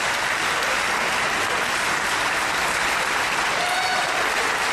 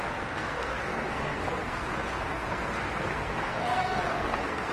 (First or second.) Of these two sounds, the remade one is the second